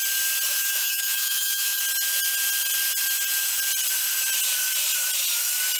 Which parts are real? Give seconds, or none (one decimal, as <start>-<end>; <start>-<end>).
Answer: 0.0-0.5; 1.8-5.8